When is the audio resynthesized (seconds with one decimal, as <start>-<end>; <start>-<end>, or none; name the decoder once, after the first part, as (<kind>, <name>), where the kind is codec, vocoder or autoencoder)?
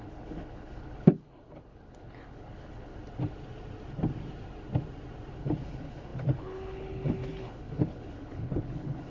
0.0-2.9 (codec, HILCodec); 5.3-9.1